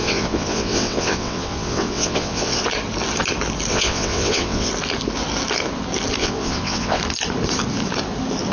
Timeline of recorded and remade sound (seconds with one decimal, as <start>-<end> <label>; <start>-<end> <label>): 0.0-2.6 remade; 2.6-3.7 recorded; 3.7-4.7 remade; 4.7-6.2 recorded; 6.2-7.0 remade; 7.0-8.5 recorded